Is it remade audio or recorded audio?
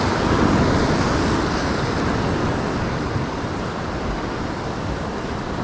recorded